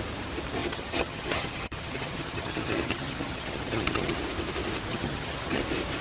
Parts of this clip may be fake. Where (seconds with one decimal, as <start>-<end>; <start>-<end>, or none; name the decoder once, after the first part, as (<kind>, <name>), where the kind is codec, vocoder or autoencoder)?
0.6-4.2 (vocoder, HiFi-GAN); 4.9-5.6